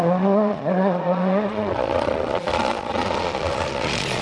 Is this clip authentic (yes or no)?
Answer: no